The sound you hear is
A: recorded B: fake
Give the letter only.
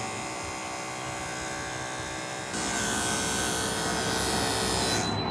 A